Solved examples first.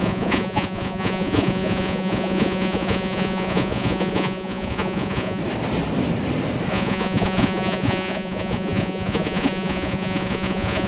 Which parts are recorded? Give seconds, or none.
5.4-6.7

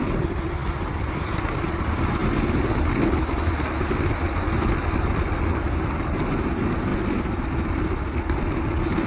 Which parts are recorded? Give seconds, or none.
0.0-9.1

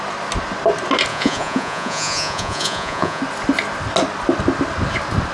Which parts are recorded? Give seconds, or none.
0.0-1.1; 3.2-5.3

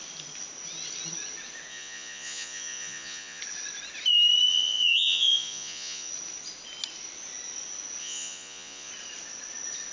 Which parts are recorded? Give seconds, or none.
0.0-1.7; 3.4-4.5; 6.1-8.0; 8.9-9.9